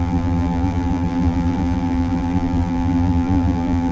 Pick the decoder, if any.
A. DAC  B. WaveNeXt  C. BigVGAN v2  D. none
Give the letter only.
C